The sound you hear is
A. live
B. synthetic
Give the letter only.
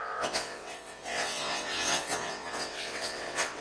B